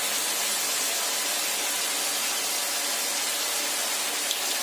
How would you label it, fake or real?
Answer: real